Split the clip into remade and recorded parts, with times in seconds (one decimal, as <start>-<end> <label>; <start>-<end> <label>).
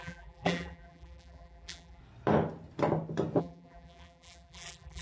0.0-2.0 remade; 2.0-3.4 recorded; 3.4-5.0 remade